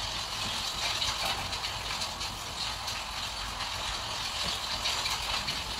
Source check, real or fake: real